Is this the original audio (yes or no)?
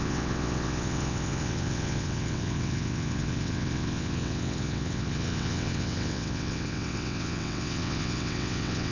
no